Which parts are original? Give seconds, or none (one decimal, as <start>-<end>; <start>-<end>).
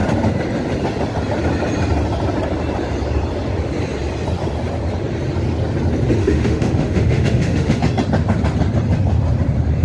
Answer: 0.0-6.2; 7.8-9.8